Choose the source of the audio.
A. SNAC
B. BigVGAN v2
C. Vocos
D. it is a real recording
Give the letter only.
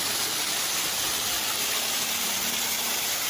D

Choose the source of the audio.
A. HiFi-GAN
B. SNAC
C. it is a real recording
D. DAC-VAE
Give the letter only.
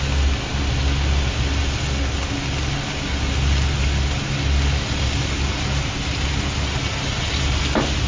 C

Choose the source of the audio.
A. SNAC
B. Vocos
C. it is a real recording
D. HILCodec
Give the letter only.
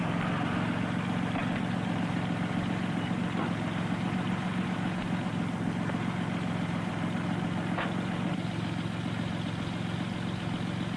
C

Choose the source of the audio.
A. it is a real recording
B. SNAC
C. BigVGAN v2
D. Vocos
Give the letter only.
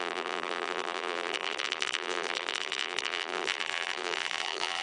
C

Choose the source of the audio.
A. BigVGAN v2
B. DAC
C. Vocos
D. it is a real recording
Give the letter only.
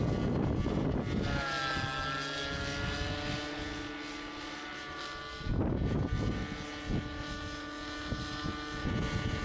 D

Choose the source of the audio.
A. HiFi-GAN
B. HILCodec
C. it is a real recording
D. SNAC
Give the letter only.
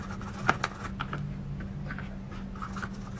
C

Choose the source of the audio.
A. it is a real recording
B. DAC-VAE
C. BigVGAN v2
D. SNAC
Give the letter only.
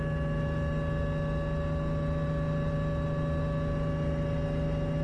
A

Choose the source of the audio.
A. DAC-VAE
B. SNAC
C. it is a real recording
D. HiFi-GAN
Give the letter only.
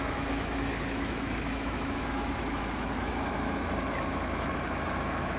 A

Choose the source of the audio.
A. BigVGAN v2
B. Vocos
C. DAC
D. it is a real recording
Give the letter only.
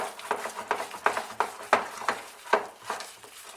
D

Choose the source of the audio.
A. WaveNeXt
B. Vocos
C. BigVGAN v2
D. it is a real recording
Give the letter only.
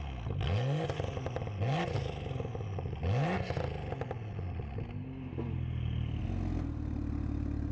D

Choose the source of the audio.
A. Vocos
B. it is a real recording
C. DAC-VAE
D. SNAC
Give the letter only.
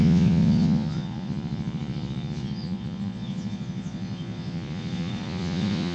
A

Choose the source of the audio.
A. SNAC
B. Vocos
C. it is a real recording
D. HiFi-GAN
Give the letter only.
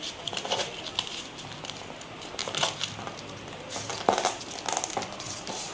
C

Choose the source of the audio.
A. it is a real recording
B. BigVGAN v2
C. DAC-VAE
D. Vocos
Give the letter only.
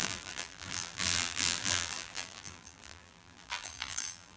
B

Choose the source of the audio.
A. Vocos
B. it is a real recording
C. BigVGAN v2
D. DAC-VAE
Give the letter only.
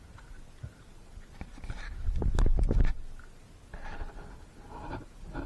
B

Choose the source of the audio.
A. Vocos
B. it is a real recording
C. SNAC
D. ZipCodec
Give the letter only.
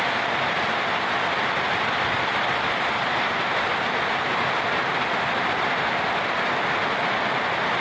B